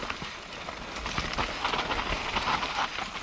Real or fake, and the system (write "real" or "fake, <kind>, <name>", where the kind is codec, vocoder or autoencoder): real